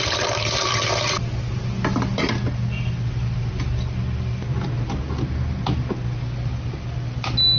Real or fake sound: real